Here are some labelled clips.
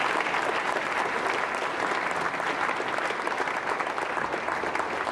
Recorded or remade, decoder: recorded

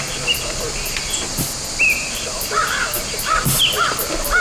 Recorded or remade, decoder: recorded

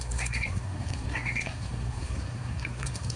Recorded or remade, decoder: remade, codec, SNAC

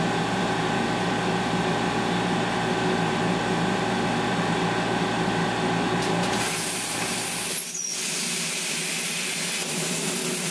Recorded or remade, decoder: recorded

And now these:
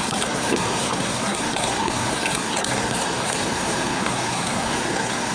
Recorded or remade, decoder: remade, codec, SNAC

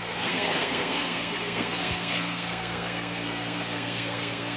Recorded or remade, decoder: remade, codec, SNAC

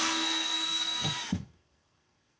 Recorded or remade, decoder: remade, codec, SNAC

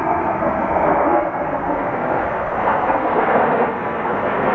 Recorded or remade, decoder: remade, codec, SNAC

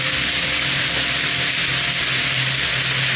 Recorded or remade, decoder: recorded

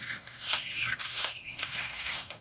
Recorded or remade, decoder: remade, codec, SNAC